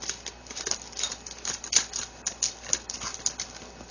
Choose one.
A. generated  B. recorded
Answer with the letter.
B